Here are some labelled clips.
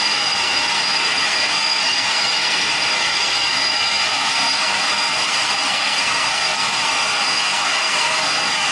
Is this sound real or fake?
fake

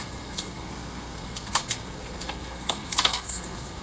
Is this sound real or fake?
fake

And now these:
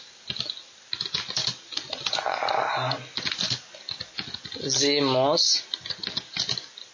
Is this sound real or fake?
real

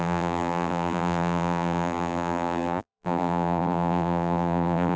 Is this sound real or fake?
fake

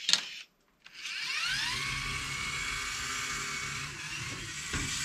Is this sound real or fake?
real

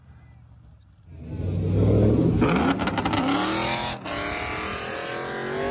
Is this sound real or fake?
real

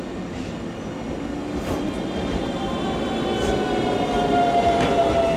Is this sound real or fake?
real